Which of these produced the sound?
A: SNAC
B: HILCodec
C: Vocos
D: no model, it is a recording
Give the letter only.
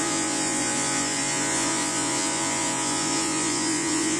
C